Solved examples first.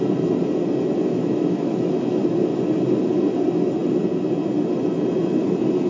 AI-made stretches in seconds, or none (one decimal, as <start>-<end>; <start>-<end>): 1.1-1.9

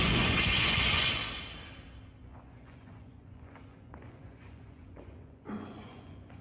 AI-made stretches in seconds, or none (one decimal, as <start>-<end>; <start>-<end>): 0.0-1.2; 2.2-6.4

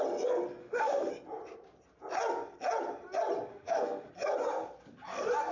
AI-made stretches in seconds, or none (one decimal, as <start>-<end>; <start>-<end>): 0.6-1.1; 3.5-4.1